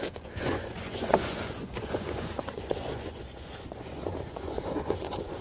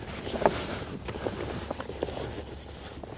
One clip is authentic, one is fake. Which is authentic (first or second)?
second